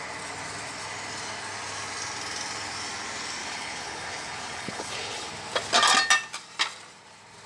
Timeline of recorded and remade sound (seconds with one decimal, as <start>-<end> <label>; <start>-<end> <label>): 0.0-3.4 recorded; 3.4-5.3 remade; 5.3-7.5 recorded